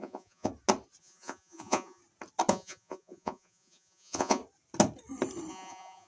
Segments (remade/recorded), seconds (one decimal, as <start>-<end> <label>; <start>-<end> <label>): 0.0-0.5 remade; 0.5-1.0 recorded; 1.0-2.0 remade; 2.0-2.5 recorded; 2.5-4.4 remade; 4.4-5.5 recorded; 5.5-6.1 remade